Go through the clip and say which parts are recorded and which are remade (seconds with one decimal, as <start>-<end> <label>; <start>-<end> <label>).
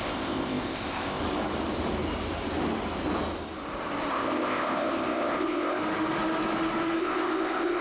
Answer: 0.0-1.2 remade; 1.2-4.1 recorded; 4.1-5.8 remade; 5.8-7.0 recorded; 7.0-7.8 remade